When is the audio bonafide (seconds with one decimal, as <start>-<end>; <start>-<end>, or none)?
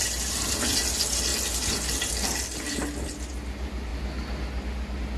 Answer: 0.0-5.2